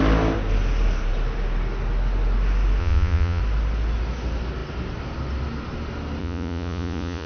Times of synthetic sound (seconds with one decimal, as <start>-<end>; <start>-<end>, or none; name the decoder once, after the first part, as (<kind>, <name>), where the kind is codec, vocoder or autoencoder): 2.8-3.4 (vocoder, Vocos); 6.2-7.3